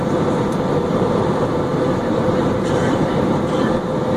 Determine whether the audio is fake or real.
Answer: fake